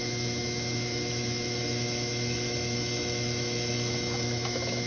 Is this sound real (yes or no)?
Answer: no